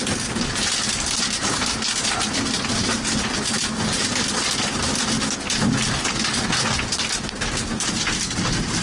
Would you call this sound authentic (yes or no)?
yes